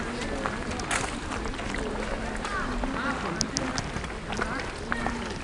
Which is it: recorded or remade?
recorded